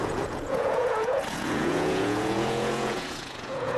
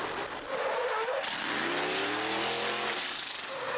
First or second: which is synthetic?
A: first